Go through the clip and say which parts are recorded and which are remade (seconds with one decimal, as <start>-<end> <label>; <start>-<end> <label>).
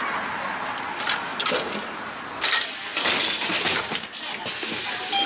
0.0-5.3 recorded